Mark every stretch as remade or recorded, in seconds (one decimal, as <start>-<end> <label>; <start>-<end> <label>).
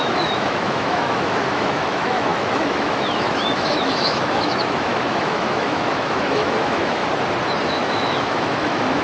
0.0-7.0 remade; 7.0-7.6 recorded; 7.6-9.0 remade